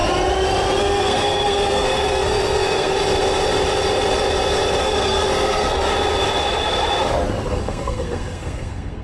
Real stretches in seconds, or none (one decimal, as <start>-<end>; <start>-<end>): 0.0-0.8; 3.0-4.8; 5.9-7.5